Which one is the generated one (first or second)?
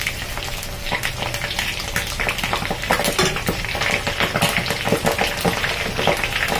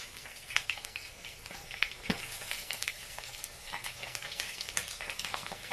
second